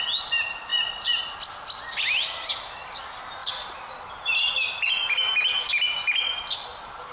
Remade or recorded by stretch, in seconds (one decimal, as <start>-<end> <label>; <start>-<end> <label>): 0.0-0.7 recorded; 0.7-1.2 remade; 1.2-3.4 recorded; 3.4-4.1 remade; 4.1-7.1 recorded